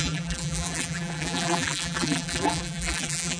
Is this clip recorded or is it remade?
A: remade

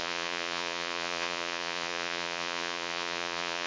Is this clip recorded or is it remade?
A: remade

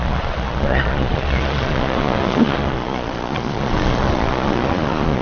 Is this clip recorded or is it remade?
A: remade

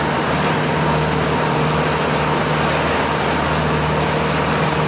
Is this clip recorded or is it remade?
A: recorded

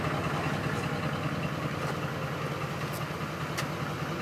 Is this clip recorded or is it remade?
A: recorded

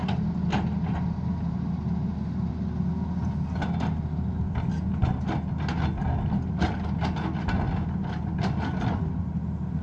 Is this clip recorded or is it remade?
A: recorded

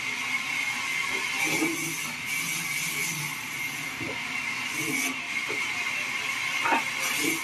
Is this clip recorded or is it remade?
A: recorded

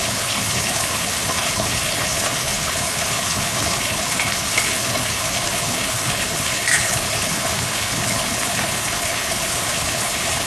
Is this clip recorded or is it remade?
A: remade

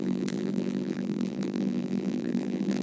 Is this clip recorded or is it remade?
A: remade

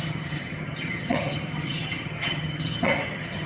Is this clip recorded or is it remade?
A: remade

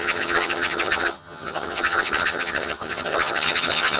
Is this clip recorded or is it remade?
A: remade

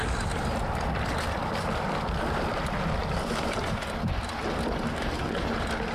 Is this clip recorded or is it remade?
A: recorded